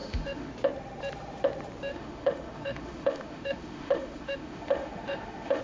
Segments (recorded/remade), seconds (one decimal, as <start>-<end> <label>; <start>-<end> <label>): 0.0-0.5 remade; 0.5-1.9 recorded; 1.9-5.6 remade